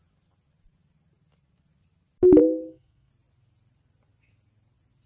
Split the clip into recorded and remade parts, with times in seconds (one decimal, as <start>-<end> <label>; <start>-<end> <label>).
0.0-2.4 recorded; 2.4-3.1 remade; 3.1-5.1 recorded